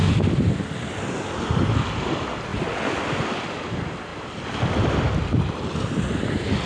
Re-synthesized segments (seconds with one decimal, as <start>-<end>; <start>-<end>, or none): none